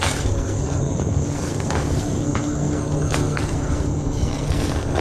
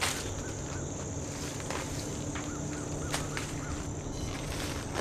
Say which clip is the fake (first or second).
first